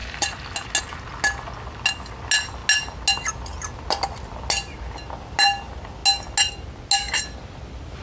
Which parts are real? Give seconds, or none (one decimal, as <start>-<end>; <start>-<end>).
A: 0.0-8.0